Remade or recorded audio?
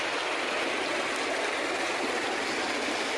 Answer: recorded